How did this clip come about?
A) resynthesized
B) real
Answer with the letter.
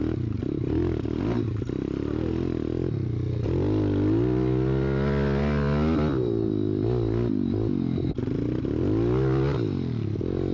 B